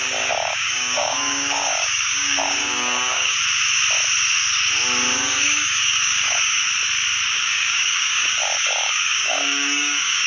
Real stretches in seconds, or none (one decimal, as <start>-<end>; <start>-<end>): 3.4-5.2; 6.6-7.4

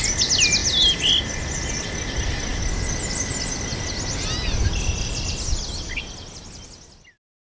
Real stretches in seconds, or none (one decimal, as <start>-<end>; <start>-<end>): 0.0-7.4

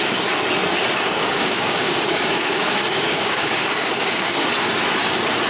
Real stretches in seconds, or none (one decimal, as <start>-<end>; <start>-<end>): 0.0-1.2; 4.5-5.5

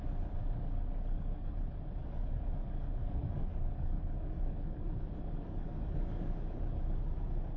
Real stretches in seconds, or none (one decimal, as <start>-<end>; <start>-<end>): 0.0-0.4; 1.5-2.0; 6.6-7.6